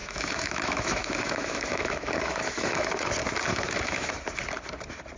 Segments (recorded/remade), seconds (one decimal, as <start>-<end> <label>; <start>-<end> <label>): 0.0-3.1 remade; 3.1-3.5 recorded; 3.5-4.1 remade; 4.1-5.2 recorded